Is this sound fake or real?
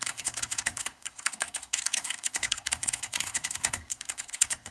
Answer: fake